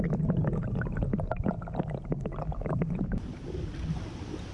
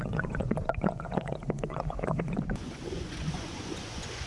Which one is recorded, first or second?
first